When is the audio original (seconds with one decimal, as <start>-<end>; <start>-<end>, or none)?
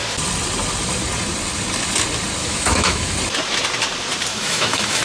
0.0-2.4; 3.1-4.3